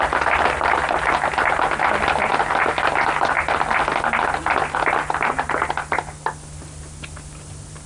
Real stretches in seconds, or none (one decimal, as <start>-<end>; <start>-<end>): 0.0-7.9